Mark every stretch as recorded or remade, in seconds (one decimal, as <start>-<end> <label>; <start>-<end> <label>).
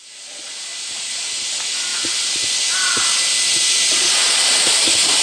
0.0-5.2 recorded